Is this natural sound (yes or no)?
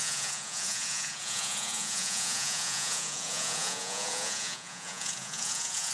no